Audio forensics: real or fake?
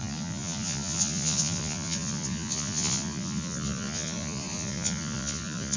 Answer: fake